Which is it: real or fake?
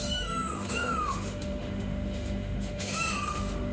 fake